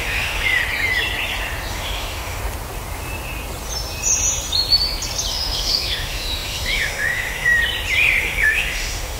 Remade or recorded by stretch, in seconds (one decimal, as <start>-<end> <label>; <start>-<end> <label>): 0.0-0.6 remade; 0.6-1.7 recorded; 1.7-2.4 remade; 2.4-5.3 recorded; 5.3-7.6 remade; 7.6-8.2 recorded; 8.2-9.2 remade